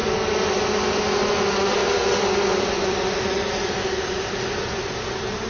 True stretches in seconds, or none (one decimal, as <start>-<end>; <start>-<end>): 0.0-5.5